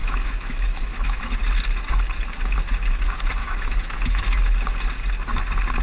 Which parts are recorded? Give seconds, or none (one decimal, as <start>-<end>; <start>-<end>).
1.2-3.4; 4.6-5.8